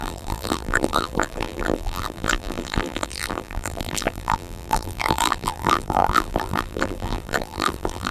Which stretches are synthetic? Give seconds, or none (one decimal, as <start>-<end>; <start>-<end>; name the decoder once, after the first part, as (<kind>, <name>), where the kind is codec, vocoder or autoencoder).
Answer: 0.0-8.1 (vocoder, BigVGAN v2)